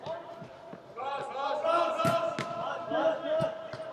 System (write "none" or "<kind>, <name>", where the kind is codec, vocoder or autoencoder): none